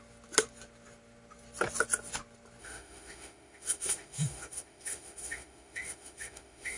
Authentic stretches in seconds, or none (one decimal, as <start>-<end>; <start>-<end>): 0.0-2.6